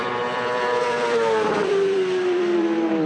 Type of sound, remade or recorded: remade